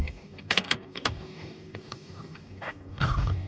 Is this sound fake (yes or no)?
yes